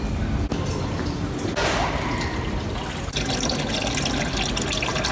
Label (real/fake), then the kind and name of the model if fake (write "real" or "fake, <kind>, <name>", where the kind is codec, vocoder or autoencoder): real